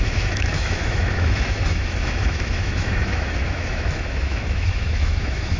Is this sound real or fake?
fake